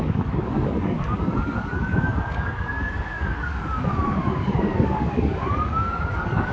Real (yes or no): no